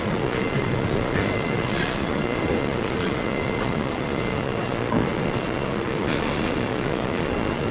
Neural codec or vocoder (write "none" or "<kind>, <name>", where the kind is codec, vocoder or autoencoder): vocoder, Vocos